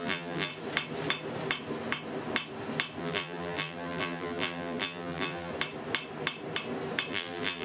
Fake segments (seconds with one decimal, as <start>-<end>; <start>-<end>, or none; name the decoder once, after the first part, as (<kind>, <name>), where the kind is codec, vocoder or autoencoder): 0.0-0.5 (vocoder, BigVGAN v2); 3.0-5.5; 7.1-7.6